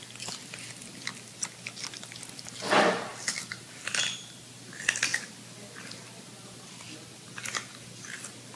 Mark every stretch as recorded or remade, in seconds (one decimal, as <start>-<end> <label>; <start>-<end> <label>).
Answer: 0.0-3.1 recorded; 3.1-4.0 remade; 4.0-8.6 recorded